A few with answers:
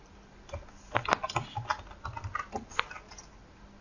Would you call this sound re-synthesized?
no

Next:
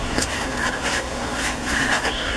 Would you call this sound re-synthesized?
yes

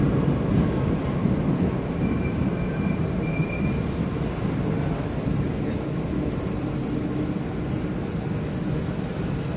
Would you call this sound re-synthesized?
no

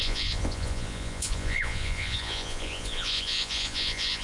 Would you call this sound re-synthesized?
yes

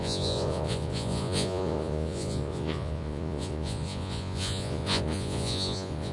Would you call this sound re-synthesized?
yes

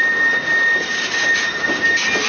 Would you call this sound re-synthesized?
no